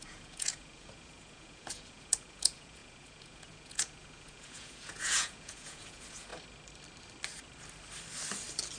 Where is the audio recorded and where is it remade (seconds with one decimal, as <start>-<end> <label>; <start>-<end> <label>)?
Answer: 0.0-6.3 remade; 6.3-8.8 recorded